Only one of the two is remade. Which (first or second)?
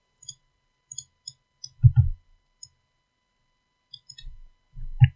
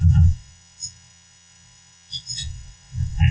second